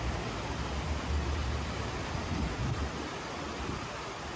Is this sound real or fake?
real